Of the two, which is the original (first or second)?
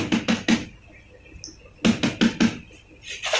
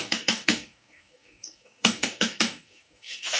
first